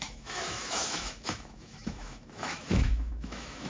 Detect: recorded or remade remade